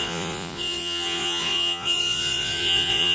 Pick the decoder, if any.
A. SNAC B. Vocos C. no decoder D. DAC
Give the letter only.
B